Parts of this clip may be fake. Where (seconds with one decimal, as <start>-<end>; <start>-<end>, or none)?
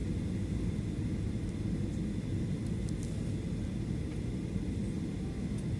none